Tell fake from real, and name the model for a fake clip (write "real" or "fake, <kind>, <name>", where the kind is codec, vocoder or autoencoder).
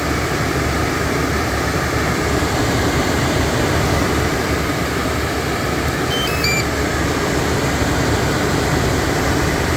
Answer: fake, vocoder, BigVGAN v2